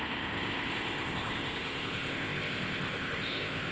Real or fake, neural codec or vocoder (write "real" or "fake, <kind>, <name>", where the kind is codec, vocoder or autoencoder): fake, codec, ZipCodec